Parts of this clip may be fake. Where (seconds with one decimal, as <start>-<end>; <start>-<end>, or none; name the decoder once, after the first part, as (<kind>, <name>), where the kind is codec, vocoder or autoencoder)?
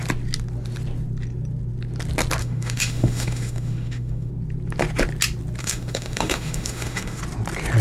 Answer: 2.4-4.3 (autoencoder, DAC-VAE); 5.6-7.2